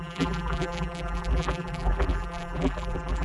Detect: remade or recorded remade